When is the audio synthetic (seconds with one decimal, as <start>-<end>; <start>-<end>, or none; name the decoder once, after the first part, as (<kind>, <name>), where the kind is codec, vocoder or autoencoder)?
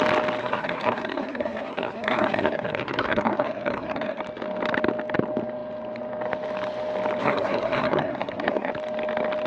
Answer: 0.4-4.2 (codec, SNAC); 7.2-8.7